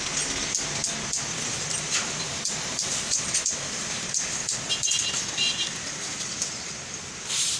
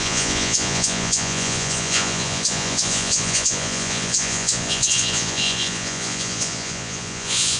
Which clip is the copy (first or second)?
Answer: second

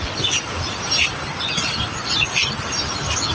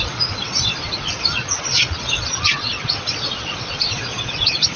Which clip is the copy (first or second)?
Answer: second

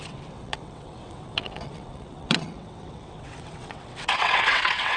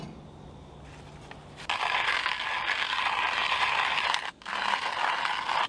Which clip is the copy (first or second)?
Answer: first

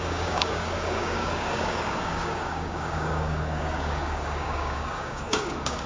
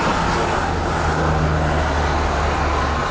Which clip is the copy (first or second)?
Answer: first